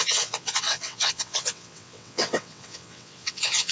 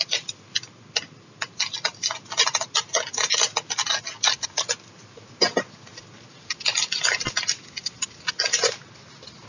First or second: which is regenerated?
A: first